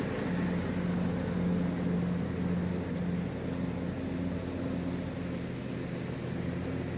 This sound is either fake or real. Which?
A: real